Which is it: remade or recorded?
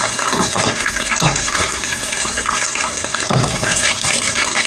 remade